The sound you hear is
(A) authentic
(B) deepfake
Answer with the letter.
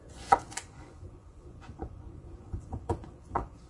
B